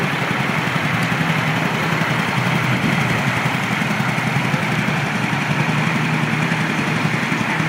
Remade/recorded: remade